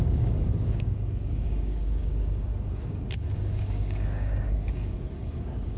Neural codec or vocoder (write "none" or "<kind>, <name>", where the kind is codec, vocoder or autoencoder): codec, DAC